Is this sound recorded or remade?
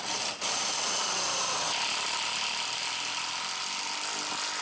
recorded